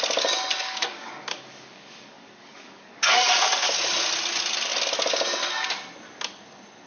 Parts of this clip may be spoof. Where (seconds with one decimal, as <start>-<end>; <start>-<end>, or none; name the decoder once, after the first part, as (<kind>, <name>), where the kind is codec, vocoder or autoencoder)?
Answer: 0.6-3.5 (codec, DAC)